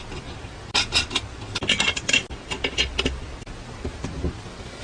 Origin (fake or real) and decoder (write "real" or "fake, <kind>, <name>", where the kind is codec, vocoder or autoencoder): real